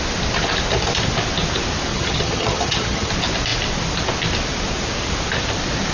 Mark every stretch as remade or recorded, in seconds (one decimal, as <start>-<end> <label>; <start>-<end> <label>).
0.0-1.9 recorded; 1.9-3.1 remade; 3.1-5.9 recorded